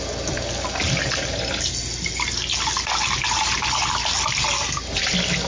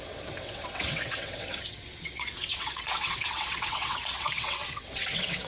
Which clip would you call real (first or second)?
first